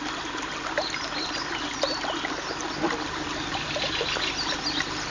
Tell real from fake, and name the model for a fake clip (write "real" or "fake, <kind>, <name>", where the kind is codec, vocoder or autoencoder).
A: real